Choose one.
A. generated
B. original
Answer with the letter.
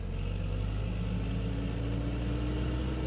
B